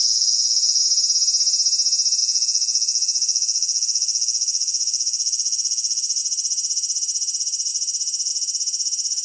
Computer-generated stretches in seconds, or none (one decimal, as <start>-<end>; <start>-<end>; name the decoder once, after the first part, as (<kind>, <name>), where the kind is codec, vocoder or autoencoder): 0.0-0.8 (vocoder, Vocos); 2.2-6.2